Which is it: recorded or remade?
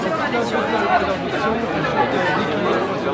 recorded